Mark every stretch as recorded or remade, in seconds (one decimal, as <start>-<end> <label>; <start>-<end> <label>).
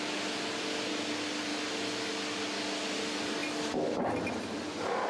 0.0-5.1 recorded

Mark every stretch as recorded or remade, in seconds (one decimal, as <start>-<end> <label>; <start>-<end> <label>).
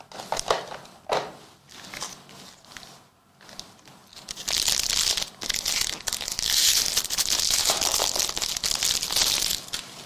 0.0-10.1 recorded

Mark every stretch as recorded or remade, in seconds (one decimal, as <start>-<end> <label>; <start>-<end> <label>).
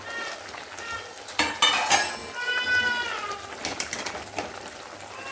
0.0-5.3 recorded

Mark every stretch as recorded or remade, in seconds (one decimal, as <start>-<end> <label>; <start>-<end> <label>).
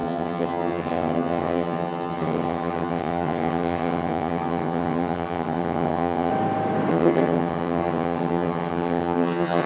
0.0-6.3 remade; 6.3-6.9 recorded; 6.9-9.7 remade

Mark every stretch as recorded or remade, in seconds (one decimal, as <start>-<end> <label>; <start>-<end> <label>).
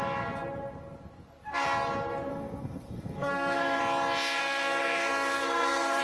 0.0-2.3 recorded; 2.3-3.8 remade; 3.8-4.4 recorded; 4.4-6.0 remade